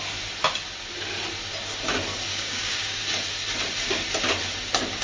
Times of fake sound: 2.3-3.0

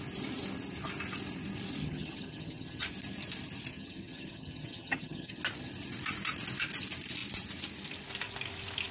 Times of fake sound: 1.8-2.9; 3.7-5.4